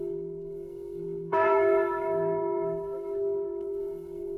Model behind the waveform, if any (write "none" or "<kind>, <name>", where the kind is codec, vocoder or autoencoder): codec, SNAC